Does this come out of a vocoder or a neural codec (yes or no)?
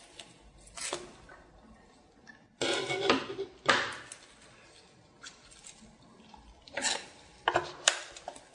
no